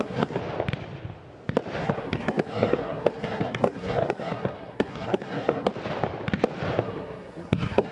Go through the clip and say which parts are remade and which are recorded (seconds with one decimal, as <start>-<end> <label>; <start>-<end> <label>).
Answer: 0.0-0.4 remade; 0.4-1.8 recorded; 1.8-5.7 remade; 5.7-6.8 recorded; 6.8-7.9 remade